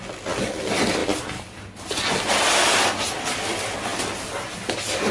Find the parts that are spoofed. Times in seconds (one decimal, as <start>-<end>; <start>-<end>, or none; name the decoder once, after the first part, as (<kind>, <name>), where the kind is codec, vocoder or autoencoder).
none